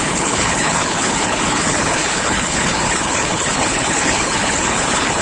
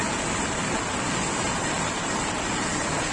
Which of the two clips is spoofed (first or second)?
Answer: first